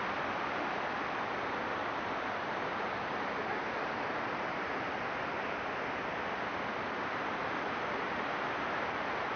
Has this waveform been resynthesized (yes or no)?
no